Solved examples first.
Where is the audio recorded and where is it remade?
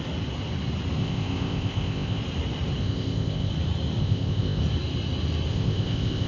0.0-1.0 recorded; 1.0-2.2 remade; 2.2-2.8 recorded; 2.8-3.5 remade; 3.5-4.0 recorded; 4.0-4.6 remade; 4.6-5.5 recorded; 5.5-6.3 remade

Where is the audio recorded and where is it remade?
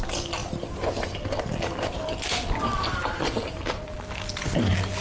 0.0-5.0 recorded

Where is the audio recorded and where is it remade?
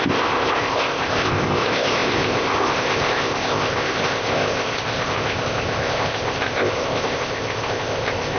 0.0-8.4 remade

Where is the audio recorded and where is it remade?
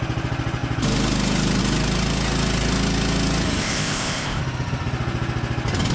0.0-3.6 recorded; 3.6-4.4 remade; 4.4-5.9 recorded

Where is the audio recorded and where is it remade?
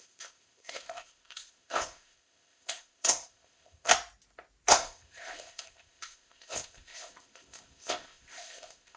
0.0-3.9 remade; 3.9-4.7 recorded; 4.7-9.0 remade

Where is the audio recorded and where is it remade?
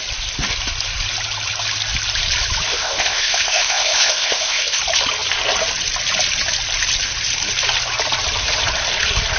0.0-2.7 recorded; 2.7-4.8 remade; 4.8-9.4 recorded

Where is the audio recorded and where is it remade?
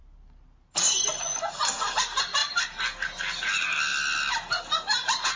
0.0-5.4 recorded